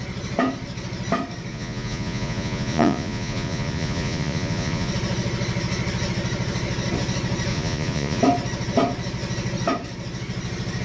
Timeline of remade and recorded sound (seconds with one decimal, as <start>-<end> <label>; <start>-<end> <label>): 0.0-1.5 recorded; 1.5-4.9 remade; 4.9-7.5 recorded; 7.5-8.2 remade; 8.2-10.8 recorded